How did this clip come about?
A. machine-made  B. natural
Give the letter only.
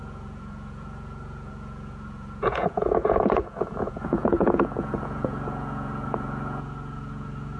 A